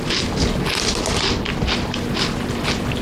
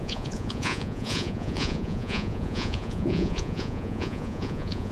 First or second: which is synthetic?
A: second